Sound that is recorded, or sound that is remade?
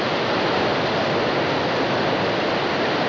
recorded